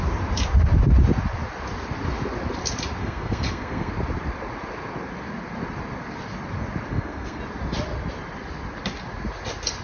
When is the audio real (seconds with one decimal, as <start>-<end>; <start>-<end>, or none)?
0.0-3.0; 3.9-6.9; 7.4-9.8